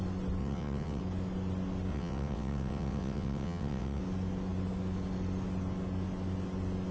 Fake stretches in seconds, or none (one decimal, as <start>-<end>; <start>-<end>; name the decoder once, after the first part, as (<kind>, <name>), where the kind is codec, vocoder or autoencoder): 0.4-1.0 (vocoder, WaveNeXt); 1.9-4.0